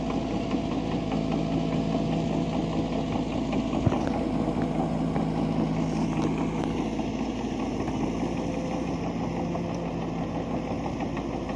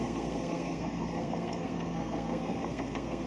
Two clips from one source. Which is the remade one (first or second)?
second